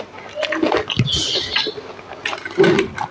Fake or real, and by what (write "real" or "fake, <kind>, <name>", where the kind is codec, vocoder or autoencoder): real